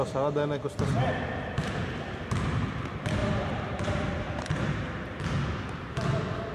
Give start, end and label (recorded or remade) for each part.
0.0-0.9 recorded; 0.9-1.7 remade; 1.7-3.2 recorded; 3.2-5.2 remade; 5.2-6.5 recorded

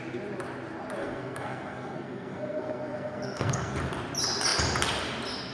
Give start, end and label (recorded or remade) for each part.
0.0-1.0 recorded; 1.0-3.8 remade; 3.8-5.5 recorded

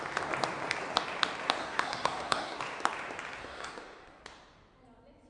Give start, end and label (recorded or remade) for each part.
0.0-1.6 recorded; 1.6-2.6 remade; 2.6-3.4 recorded; 3.4-4.2 remade; 4.2-5.3 recorded

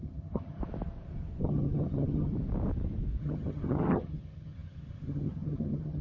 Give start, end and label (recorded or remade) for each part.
0.0-0.6 remade; 0.6-1.4 recorded; 1.4-2.3 remade; 2.3-3.2 recorded; 3.2-6.0 remade

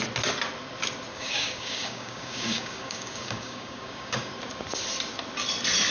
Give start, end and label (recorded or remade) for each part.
0.0-1.1 recorded; 1.1-4.3 remade; 4.3-5.9 recorded

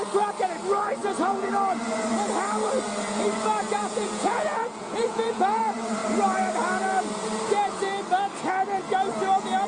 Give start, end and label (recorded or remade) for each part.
0.0-1.0 recorded; 1.0-1.5 remade; 1.5-3.6 recorded; 3.6-5.6 remade; 5.6-9.7 recorded